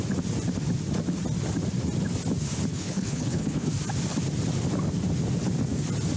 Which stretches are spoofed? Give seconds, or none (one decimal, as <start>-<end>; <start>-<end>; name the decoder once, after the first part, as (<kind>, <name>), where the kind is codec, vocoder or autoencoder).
2.7-3.7 (codec, HILCodec)